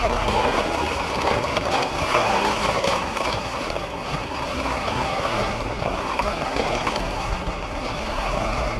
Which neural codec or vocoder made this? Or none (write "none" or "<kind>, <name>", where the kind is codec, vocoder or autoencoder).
codec, SNAC